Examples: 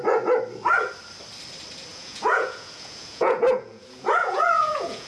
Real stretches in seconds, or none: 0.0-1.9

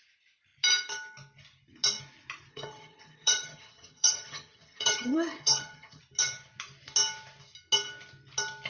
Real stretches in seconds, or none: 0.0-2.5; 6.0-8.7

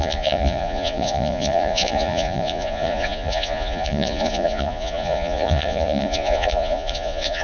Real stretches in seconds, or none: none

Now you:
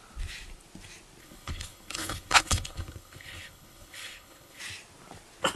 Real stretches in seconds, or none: 0.0-1.2; 4.6-5.6

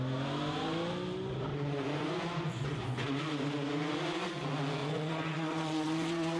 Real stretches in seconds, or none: 0.0-1.5; 3.2-4.8

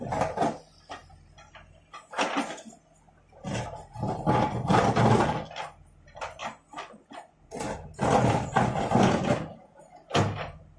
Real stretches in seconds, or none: 0.0-10.8